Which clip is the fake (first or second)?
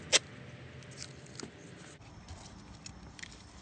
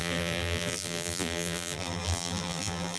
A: second